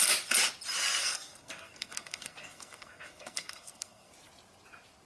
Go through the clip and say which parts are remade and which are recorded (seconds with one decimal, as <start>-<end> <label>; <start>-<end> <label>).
0.0-1.0 recorded; 1.0-4.1 remade; 4.1-5.1 recorded